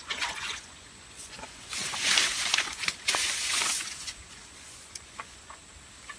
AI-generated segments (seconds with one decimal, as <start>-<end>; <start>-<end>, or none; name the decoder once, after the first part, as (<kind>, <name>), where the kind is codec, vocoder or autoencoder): 0.0-5.6 (vocoder, Vocos)